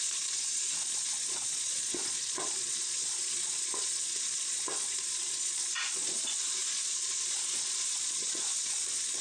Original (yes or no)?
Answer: no